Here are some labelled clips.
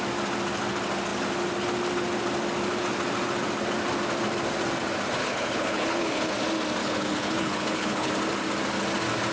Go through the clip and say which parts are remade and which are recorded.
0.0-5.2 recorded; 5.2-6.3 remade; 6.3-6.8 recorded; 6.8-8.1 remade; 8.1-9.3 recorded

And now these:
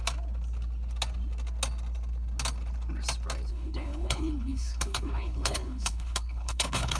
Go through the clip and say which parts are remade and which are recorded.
0.0-3.5 recorded; 3.5-7.0 remade

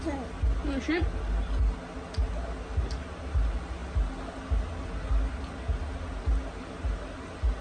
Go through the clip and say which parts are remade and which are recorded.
0.0-7.6 recorded

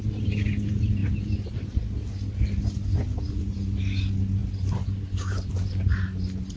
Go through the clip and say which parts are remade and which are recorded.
0.0-6.6 recorded

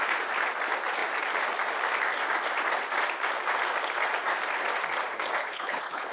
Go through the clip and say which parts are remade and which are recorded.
0.0-5.4 recorded; 5.4-6.1 remade

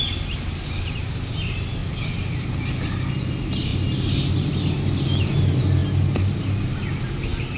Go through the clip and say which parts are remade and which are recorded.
0.0-7.6 recorded